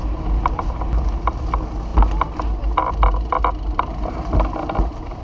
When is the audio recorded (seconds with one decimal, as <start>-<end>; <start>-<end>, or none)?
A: 0.0-5.2